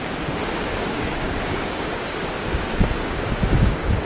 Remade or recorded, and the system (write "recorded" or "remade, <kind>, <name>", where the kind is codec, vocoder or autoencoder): remade, codec, DAC